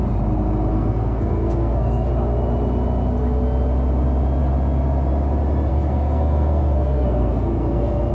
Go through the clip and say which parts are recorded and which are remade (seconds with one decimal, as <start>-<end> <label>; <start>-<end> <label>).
0.0-0.7 recorded; 0.7-2.1 remade; 2.1-5.7 recorded; 5.7-8.1 remade